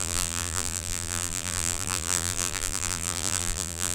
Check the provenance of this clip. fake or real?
fake